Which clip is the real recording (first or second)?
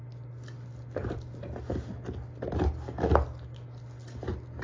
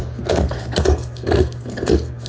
first